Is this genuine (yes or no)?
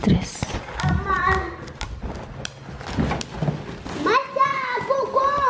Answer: yes